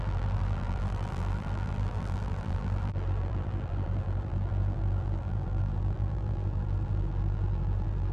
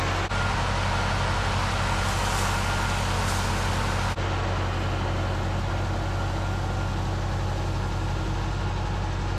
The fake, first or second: first